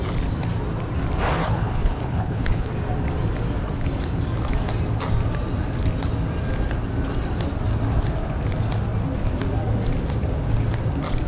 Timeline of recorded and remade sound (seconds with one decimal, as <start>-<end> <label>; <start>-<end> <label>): 0.0-1.4 recorded; 1.4-2.7 remade; 2.7-11.3 recorded